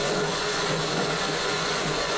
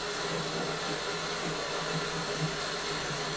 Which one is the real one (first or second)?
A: second